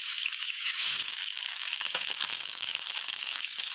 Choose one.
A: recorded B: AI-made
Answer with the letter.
B